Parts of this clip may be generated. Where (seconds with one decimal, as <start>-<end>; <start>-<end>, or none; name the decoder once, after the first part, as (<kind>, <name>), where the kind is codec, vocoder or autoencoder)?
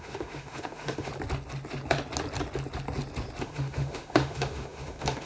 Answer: 0.0-1.1 (autoencoder, DAC-VAE); 3.4-5.3